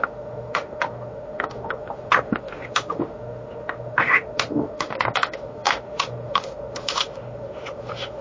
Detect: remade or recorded remade